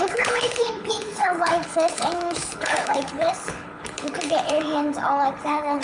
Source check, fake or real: fake